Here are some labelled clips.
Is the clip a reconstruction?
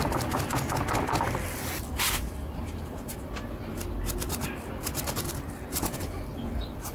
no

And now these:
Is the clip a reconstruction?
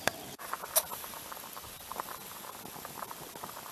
no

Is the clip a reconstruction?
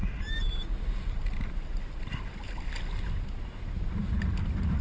no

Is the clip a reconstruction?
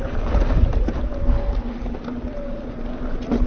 no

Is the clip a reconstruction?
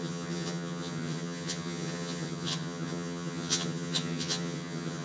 yes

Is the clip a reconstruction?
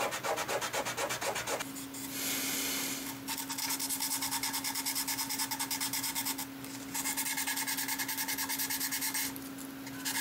no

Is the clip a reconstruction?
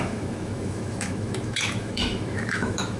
yes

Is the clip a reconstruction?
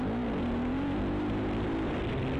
no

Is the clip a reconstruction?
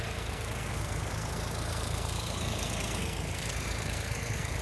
yes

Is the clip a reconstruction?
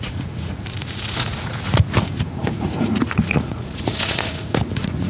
yes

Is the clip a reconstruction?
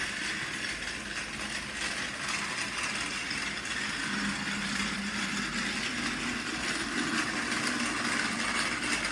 no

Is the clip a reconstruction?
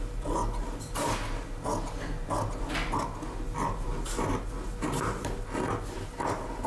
no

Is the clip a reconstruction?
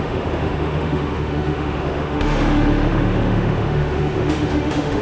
yes